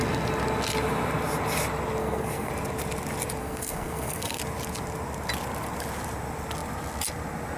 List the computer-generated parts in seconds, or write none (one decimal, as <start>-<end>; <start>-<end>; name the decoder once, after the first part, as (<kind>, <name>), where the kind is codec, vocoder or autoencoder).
2.0-2.5 (codec, SNAC); 3.4-4.4

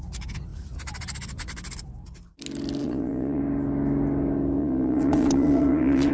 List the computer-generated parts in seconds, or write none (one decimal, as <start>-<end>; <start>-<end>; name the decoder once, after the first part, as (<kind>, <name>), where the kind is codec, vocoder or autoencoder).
2.8-3.4 (vocoder, Vocos); 4.6-6.1

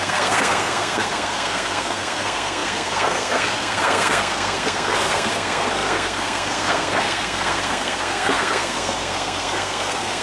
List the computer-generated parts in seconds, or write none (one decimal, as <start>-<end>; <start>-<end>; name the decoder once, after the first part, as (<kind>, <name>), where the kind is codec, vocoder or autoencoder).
0.0-10.2 (codec, SNAC)

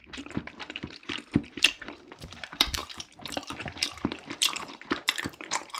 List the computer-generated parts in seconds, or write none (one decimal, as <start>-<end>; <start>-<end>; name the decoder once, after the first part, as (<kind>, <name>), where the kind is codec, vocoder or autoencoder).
0.0-5.8 (vocoder, BigVGAN v2)

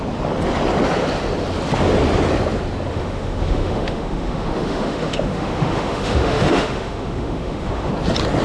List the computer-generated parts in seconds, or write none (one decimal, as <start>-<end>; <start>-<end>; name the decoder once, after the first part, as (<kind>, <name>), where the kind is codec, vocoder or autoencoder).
2.9-7.9 (autoencoder, DAC-VAE)

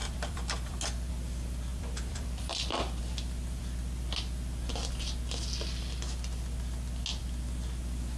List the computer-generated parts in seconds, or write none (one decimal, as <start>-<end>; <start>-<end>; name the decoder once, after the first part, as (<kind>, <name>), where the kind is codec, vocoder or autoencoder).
0.0-1.1 (vocoder, BigVGAN v2); 1.7-3.0